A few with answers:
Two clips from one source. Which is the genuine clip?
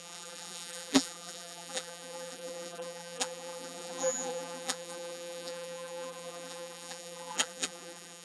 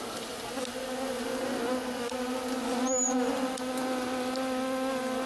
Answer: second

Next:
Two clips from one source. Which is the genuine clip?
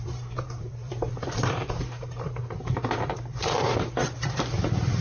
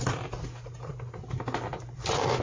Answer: second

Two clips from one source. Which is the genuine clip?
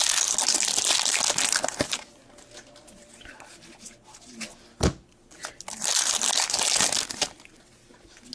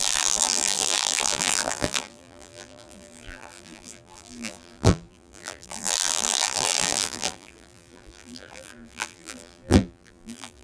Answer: first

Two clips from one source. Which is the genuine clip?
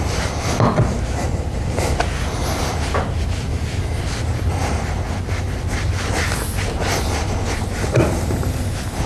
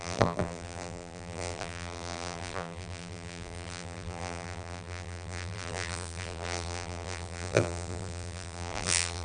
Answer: first